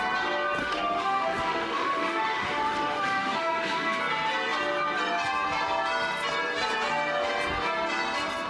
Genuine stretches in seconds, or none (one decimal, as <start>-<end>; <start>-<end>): 0.0-0.6; 4.0-8.5